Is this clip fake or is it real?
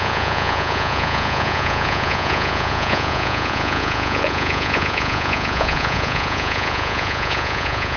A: fake